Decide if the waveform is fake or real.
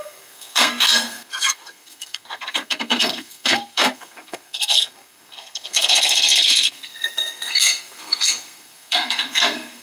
fake